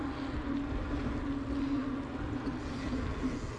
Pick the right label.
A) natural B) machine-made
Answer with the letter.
A